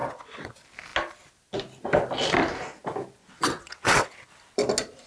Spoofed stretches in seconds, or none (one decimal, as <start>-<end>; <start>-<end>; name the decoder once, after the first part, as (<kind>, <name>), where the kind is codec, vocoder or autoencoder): 0.0-0.5 (vocoder, WaveNeXt); 3.2-4.3